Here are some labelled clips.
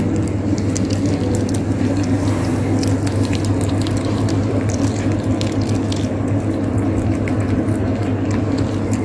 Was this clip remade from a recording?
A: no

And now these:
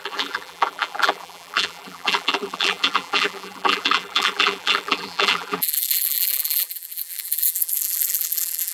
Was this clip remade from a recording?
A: yes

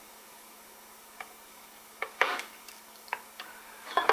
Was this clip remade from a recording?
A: yes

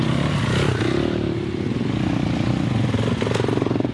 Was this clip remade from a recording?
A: no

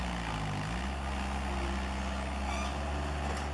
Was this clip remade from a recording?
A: no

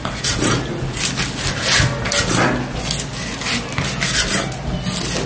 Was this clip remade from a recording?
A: no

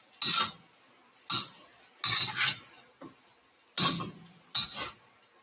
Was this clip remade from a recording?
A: no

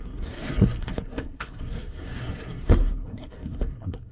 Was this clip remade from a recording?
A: yes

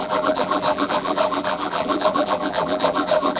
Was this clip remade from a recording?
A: yes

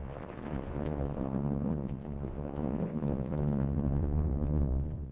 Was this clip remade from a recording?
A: yes